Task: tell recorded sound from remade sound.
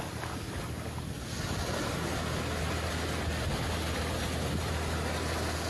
recorded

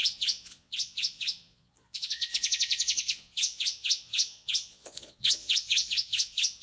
remade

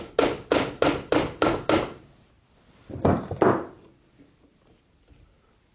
recorded